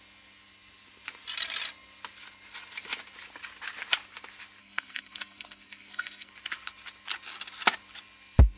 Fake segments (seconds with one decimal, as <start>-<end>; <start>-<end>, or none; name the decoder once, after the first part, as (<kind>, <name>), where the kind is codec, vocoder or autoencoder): 4.6-6.3 (codec, SNAC)